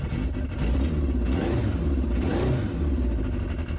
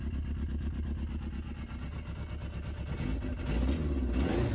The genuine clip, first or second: second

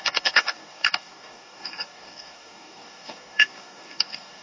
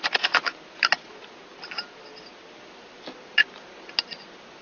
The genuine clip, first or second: second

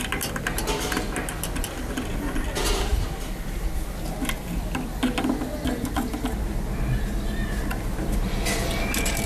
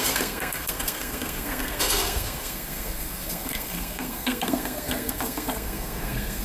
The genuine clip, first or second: first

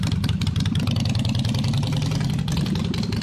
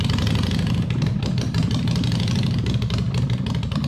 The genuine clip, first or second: second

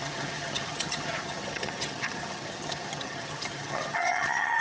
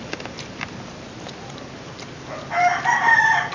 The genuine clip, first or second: second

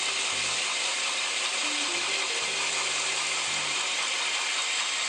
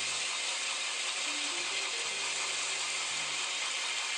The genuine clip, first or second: second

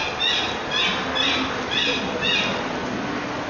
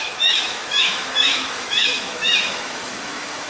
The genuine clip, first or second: first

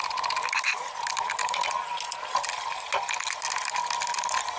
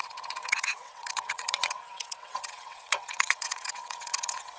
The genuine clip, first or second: first